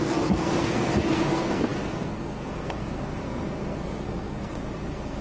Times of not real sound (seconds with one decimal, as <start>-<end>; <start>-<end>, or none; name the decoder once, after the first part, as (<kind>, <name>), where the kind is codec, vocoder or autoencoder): 0.0-5.2 (codec, SNAC)